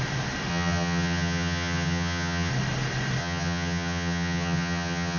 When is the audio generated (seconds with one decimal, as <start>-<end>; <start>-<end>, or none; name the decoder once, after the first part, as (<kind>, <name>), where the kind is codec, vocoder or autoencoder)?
0.5-2.5 (vocoder, HiFi-GAN); 3.2-5.2

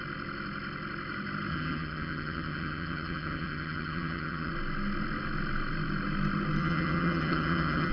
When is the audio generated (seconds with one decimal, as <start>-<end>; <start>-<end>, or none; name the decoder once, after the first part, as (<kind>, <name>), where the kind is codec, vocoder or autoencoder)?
1.5-4.5 (vocoder, HiFi-GAN); 6.6-7.9

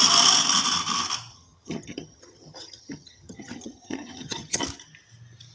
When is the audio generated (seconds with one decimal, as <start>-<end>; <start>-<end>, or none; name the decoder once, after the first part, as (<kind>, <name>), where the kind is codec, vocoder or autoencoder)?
1.3-4.6 (vocoder, HiFi-GAN)

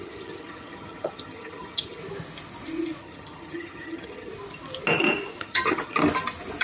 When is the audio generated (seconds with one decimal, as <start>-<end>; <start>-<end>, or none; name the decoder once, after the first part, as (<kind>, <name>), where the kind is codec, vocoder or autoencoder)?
0.0-2.0 (vocoder, HiFi-GAN); 3.0-4.3; 5.4-6.0

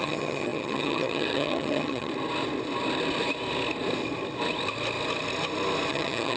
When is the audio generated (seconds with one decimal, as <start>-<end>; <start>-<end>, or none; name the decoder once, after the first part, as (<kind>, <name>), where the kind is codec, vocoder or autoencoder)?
0.0-2.1 (vocoder, HiFi-GAN); 5.9-6.4